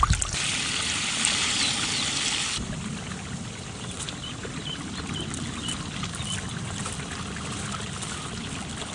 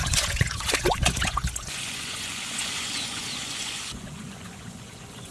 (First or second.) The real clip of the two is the first